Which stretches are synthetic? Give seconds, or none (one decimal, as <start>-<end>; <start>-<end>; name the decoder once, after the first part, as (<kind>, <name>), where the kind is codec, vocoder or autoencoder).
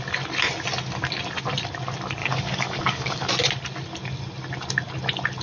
2.2-3.3 (codec, DAC)